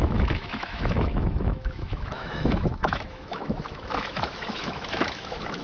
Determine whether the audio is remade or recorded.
remade